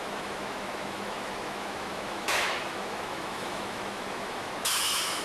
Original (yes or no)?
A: no